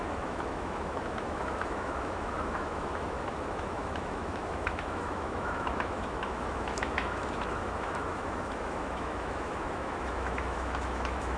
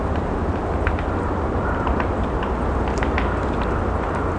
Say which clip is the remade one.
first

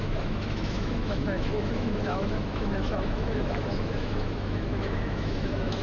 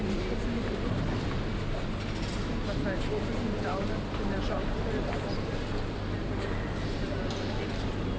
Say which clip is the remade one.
first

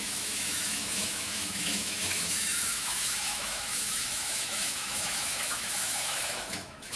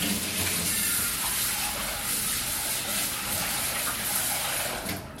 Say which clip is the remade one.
first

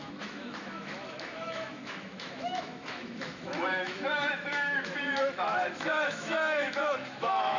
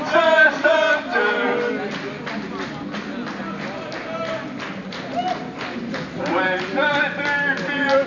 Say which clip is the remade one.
first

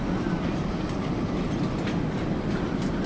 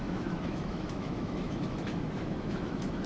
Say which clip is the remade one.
second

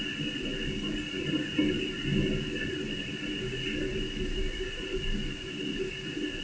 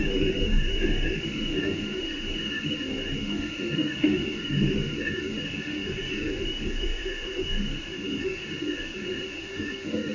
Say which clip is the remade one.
second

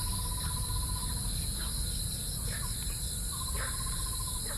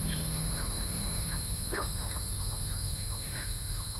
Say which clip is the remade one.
second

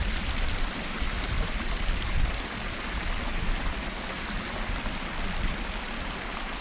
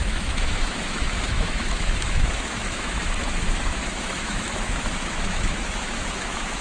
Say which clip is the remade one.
second